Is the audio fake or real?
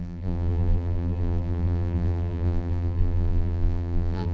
fake